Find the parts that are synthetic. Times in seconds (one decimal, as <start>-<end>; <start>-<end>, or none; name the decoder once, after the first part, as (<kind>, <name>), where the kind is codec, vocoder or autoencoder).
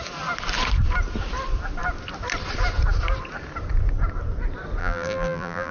4.8-5.7 (vocoder, BigVGAN v2)